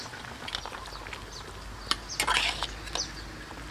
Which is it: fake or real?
real